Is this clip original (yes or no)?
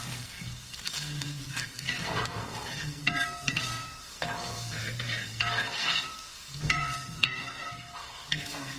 no